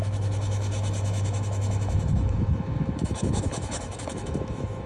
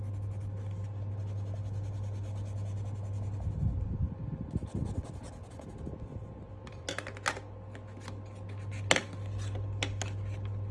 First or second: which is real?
second